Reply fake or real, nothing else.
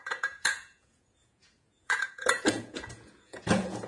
fake